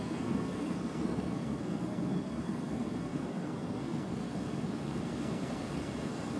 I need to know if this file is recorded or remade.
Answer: remade